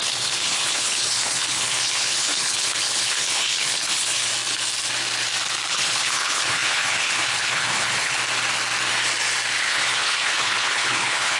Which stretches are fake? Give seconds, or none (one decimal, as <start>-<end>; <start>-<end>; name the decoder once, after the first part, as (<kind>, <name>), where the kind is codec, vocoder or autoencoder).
0.0-4.3 (codec, HILCodec); 5.7-8.2; 9.6-11.4

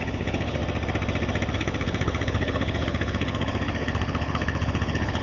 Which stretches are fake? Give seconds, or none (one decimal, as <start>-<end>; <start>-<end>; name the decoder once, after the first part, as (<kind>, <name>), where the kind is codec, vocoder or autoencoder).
0.0-0.6 (codec, HILCodec); 1.5-5.2